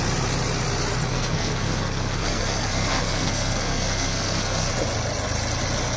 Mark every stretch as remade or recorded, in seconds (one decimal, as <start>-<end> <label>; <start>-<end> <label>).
0.0-1.1 recorded; 1.1-4.7 remade; 4.7-6.0 recorded